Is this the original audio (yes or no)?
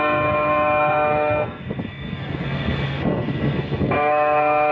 no